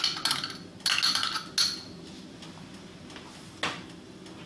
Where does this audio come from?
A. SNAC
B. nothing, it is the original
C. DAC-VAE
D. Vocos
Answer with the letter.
B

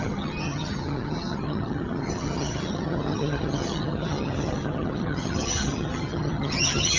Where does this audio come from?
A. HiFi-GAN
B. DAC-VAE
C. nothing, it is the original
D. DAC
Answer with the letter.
A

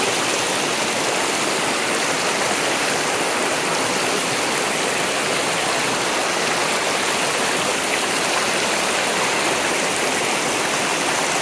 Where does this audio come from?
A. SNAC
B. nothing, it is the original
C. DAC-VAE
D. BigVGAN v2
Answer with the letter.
B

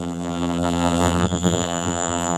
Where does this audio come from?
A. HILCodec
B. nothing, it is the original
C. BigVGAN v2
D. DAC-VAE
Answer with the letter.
C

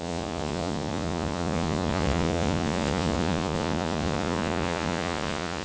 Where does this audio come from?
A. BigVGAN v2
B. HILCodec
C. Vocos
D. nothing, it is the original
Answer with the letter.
C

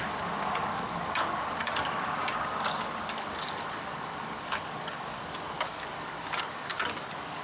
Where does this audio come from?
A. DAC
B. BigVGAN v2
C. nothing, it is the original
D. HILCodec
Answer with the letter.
A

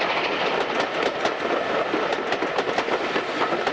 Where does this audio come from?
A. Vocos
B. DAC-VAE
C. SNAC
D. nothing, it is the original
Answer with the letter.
D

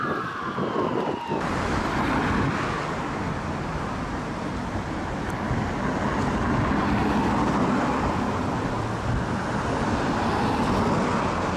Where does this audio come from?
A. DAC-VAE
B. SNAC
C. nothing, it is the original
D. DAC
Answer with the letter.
C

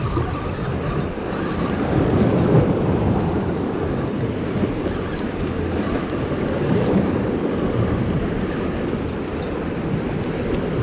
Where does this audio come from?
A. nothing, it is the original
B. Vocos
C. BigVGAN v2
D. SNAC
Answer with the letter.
A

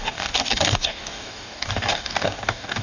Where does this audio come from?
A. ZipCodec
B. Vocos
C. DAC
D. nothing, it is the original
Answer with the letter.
C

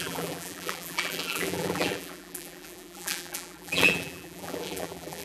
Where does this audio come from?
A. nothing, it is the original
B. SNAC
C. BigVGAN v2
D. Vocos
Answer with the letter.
C